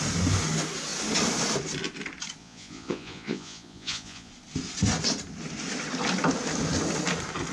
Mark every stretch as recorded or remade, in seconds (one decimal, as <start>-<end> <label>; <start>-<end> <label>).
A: 0.0-2.4 recorded; 2.4-4.3 remade; 4.3-7.5 recorded